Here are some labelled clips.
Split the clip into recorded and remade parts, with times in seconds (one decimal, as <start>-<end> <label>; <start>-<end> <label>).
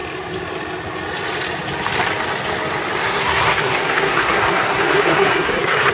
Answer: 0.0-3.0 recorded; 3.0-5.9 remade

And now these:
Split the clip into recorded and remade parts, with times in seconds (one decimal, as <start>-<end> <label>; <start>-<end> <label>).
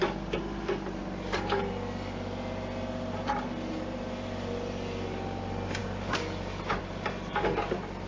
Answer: 0.0-8.1 recorded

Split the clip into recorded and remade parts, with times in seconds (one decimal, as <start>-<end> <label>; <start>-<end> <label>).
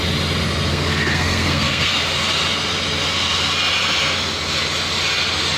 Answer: 0.0-0.7 recorded; 0.7-1.9 remade; 1.9-5.6 recorded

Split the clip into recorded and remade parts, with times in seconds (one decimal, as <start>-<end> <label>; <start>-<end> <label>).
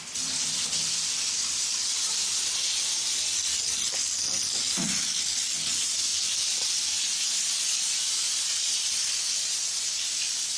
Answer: 0.0-10.6 recorded